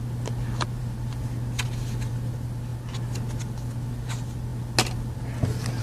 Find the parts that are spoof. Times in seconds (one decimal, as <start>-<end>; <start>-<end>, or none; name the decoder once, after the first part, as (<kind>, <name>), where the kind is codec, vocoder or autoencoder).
none